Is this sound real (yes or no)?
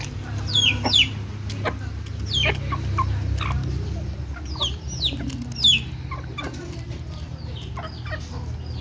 yes